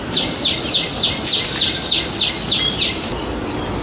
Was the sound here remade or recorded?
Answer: recorded